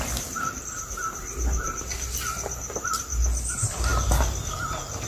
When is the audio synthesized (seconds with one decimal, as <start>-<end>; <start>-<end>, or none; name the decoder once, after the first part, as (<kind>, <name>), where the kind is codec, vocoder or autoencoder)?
none